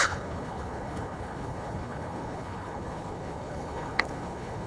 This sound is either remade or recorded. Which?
remade